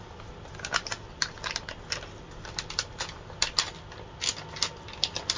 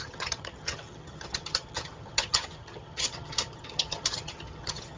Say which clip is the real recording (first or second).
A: first